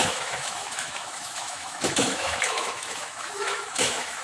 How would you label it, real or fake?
fake